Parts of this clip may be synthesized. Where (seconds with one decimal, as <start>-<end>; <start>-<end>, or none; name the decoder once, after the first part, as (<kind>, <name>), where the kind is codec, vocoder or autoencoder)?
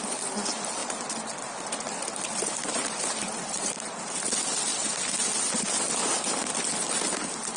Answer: none